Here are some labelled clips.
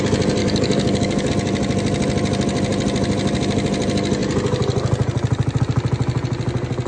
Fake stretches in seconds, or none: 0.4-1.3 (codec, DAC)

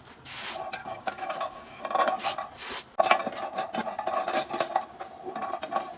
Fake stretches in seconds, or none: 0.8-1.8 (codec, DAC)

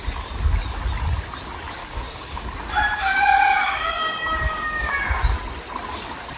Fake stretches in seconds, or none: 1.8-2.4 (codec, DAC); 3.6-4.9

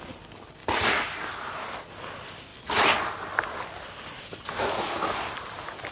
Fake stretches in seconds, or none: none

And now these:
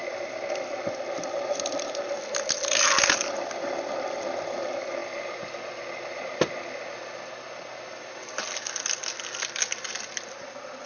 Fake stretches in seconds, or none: none

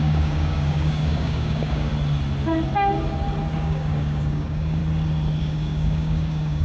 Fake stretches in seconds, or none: 0.0-1.9 (codec, DAC); 3.6-4.8; 5.4-6.6